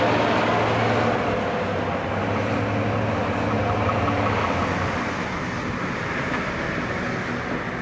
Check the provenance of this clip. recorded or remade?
recorded